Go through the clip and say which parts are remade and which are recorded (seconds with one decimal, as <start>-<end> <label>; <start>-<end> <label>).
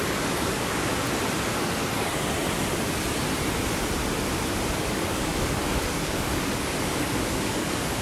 0.0-0.9 remade; 0.9-4.8 recorded; 4.8-8.0 remade